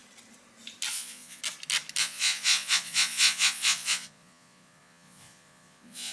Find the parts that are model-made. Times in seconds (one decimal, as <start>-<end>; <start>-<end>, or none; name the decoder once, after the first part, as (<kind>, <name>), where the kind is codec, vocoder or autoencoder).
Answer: 0.9-1.4 (vocoder, Vocos); 2.0-6.1